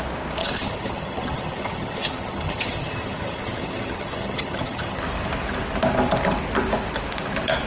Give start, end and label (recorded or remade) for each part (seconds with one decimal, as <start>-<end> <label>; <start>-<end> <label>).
0.0-0.4 recorded; 0.4-5.0 remade; 5.0-7.7 recorded